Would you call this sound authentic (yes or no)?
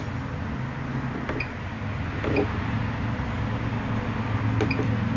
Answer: yes